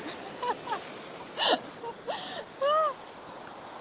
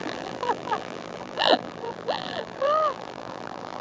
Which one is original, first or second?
first